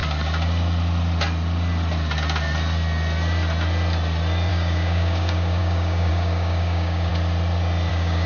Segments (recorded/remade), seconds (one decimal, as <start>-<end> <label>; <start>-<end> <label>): 0.0-4.5 recorded; 4.5-7.1 remade; 7.1-7.9 recorded; 7.9-8.3 remade